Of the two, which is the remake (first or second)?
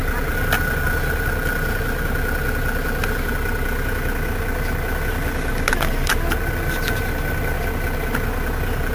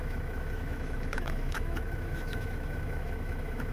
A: second